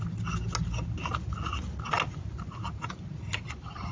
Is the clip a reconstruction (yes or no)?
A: no